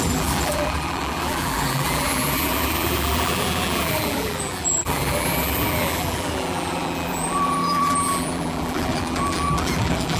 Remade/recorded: remade